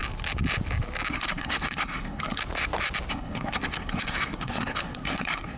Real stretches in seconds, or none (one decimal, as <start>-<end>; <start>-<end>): 0.0-1.1; 2.4-3.1